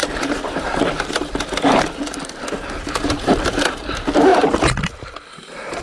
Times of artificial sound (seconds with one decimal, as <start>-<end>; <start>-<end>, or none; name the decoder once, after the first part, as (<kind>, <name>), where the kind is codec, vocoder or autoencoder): 0.0-3.0 (vocoder, BigVGAN v2); 4.3-5.8